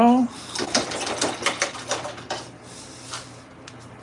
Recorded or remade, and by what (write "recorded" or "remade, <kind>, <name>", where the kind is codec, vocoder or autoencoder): recorded